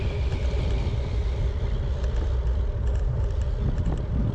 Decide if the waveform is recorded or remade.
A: remade